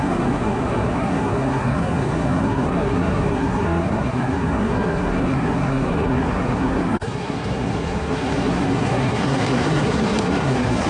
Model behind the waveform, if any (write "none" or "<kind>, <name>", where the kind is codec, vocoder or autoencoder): codec, SNAC